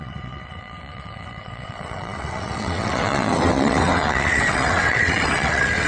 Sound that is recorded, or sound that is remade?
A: remade